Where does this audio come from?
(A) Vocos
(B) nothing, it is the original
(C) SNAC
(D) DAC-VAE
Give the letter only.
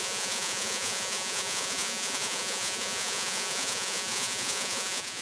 A